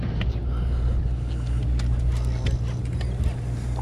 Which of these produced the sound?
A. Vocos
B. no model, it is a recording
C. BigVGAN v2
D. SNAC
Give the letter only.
B